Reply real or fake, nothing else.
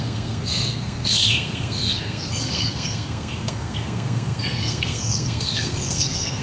fake